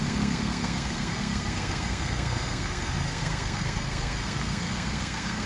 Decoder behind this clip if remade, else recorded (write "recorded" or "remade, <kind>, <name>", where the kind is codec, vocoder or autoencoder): remade, codec, SNAC